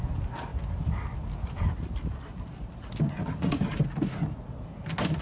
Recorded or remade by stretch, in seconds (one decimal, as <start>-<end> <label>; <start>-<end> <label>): 0.0-3.2 recorded; 3.2-3.8 remade; 3.8-5.2 recorded